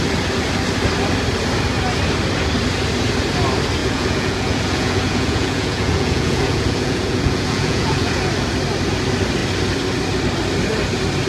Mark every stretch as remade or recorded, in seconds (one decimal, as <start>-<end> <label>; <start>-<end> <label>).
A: 0.0-3.8 recorded; 3.8-8.3 remade; 8.3-11.3 recorded